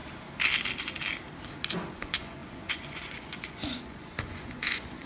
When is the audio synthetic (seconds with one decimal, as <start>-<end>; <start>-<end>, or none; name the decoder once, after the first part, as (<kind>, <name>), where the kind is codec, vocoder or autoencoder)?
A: 1.9-5.1 (vocoder, Vocos)